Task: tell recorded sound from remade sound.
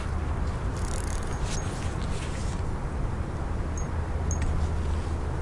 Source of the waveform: recorded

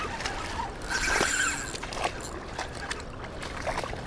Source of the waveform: recorded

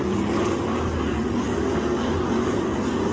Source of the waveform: recorded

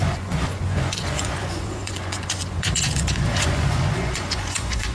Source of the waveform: remade